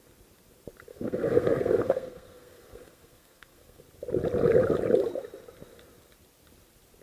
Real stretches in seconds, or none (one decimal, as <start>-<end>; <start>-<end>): 0.0-0.9; 3.8-7.0